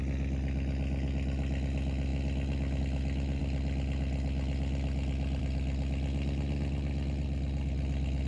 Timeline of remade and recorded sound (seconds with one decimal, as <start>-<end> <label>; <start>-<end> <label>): 0.0-8.3 recorded